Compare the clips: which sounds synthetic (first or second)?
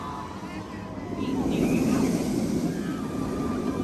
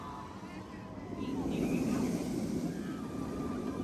second